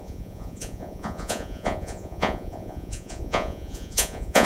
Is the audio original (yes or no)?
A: no